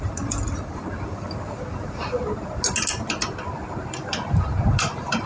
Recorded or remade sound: recorded